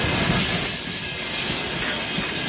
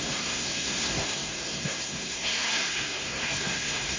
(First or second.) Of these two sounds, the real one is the first